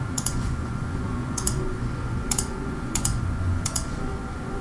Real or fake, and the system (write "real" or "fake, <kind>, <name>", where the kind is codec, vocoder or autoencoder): fake, vocoder, Vocos